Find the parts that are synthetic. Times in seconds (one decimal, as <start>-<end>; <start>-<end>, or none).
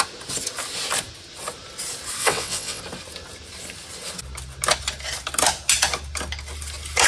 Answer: 2.2-2.8